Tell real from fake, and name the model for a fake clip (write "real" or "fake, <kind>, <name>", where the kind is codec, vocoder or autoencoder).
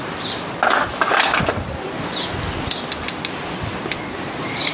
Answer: real